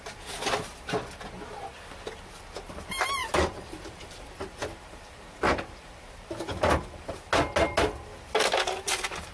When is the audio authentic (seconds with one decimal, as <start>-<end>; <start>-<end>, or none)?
0.0-3.2; 4.4-9.3